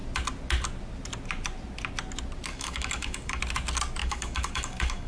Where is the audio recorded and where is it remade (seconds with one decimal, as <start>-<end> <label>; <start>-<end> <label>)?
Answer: 0.0-2.5 recorded; 2.5-3.4 remade; 3.4-4.0 recorded; 4.0-5.1 remade